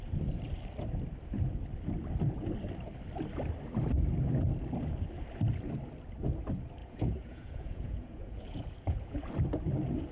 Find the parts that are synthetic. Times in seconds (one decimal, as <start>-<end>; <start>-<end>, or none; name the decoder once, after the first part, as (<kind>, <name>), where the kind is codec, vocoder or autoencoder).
6.8-9.3 (vocoder, Vocos)